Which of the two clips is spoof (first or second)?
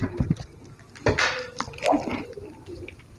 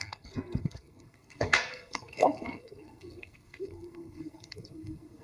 second